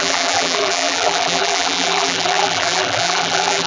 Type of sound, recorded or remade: remade